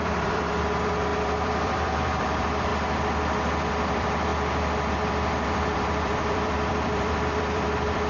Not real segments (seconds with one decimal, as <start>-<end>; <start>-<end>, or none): 0.0-2.7; 3.7-8.1